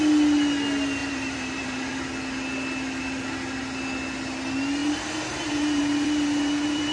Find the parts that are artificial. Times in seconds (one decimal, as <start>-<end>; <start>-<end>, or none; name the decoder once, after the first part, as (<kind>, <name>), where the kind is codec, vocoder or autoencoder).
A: 1.0-1.9 (vocoder, BigVGAN v2); 4.8-6.9